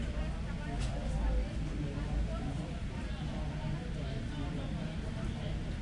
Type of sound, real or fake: real